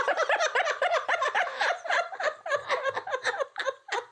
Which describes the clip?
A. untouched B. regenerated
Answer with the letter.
B